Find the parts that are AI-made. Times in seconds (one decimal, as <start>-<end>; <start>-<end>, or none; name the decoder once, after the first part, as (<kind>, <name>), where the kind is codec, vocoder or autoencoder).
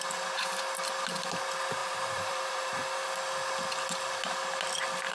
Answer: 1.8-2.7 (vocoder, BigVGAN v2)